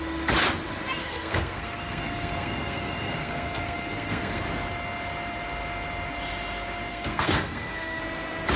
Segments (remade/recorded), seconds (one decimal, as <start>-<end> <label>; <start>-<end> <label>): 0.0-1.0 recorded; 1.0-4.4 remade; 4.4-6.9 recorded; 6.9-8.0 remade; 8.0-8.6 recorded